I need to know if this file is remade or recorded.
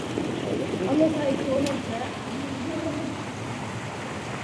recorded